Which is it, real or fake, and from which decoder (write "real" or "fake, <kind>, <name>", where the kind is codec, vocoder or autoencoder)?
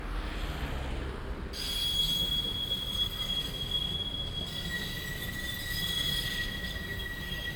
real